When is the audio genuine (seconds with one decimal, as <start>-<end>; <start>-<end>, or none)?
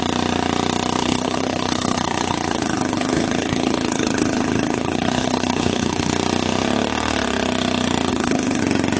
0.0-1.0; 6.1-8.1; 8.6-9.0